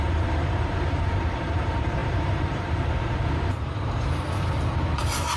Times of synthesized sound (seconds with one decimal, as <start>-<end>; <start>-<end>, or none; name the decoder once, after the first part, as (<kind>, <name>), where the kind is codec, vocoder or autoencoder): 0.0-5.4 (vocoder, BigVGAN v2)